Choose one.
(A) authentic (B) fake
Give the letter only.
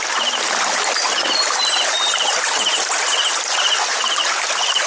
A